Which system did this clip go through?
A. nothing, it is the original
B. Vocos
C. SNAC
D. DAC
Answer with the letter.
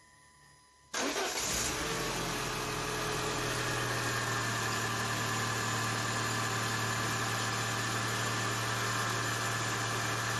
A